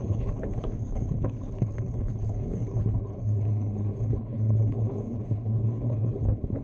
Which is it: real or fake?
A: fake